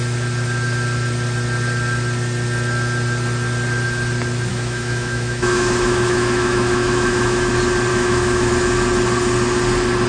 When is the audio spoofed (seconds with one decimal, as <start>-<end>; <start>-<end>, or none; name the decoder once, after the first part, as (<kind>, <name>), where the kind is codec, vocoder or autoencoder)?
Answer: 4.5-7.5 (autoencoder, DAC-VAE); 7.9-8.5